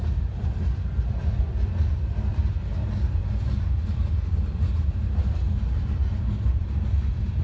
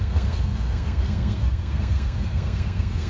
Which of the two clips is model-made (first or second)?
second